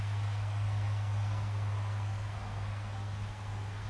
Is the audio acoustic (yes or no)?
no